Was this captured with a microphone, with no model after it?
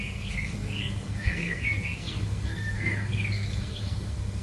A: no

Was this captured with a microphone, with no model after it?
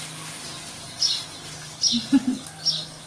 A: yes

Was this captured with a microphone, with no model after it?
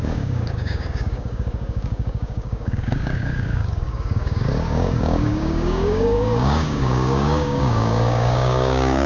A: no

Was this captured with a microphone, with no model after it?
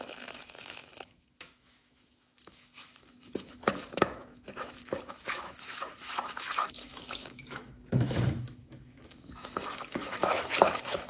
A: no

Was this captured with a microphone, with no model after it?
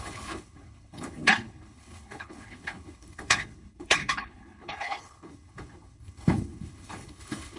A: no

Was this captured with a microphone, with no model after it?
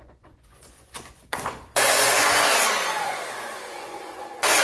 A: no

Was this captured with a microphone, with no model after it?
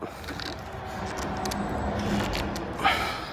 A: yes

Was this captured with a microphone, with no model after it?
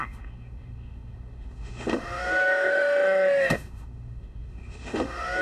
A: no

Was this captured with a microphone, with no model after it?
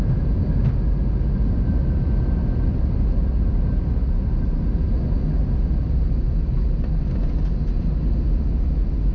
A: yes